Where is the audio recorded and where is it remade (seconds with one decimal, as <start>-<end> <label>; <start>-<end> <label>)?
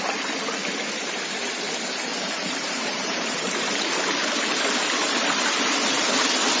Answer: 0.0-2.1 recorded; 2.1-4.7 remade; 4.7-6.6 recorded